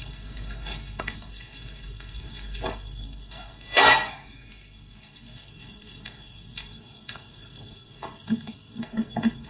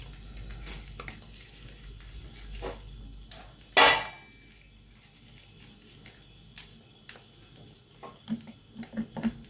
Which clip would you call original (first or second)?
second